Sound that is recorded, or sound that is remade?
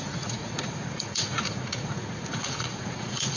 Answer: remade